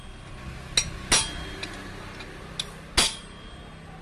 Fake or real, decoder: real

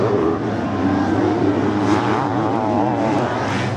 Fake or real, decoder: real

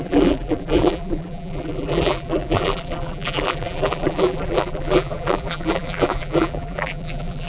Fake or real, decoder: fake, vocoder, BigVGAN v2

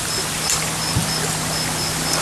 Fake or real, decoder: real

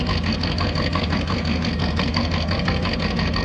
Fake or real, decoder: fake, codec, SNAC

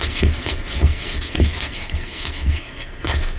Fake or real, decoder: fake, codec, SNAC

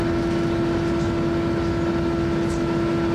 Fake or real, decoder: real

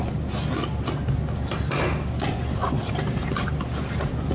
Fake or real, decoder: real